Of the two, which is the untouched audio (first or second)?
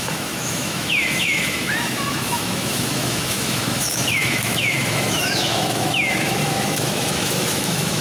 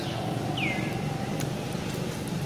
second